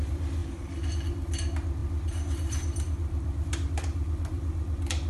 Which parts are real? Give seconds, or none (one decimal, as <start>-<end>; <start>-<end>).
0.4-0.9